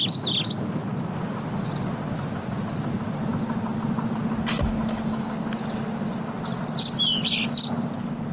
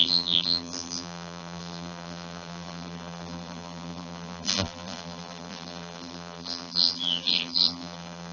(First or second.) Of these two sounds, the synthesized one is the second